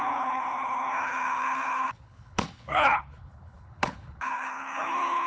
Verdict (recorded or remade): remade